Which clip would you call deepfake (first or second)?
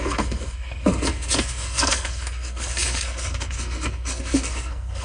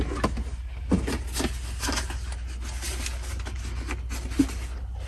first